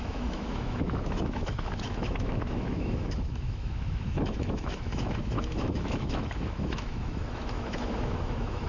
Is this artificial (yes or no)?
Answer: yes